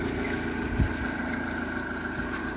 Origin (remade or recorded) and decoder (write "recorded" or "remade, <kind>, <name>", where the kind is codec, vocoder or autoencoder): recorded